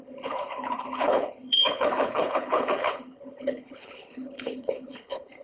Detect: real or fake fake